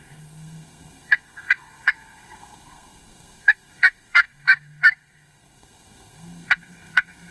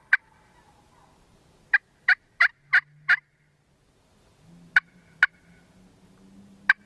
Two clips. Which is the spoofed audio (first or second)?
first